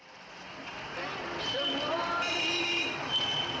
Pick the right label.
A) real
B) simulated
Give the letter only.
A